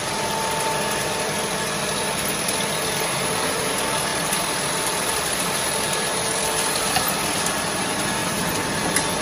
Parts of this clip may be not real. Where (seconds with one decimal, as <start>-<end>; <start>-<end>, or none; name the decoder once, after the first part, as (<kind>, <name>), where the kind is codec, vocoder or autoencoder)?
4.1-6.5 (vocoder, BigVGAN v2); 8.2-9.2